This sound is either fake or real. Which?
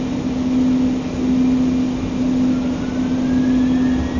real